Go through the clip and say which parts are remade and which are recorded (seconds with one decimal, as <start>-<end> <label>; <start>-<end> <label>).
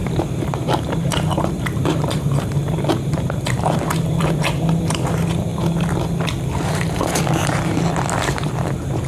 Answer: 0.0-5.5 remade; 5.5-6.5 recorded; 6.5-9.1 remade